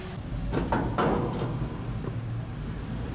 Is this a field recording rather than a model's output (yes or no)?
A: yes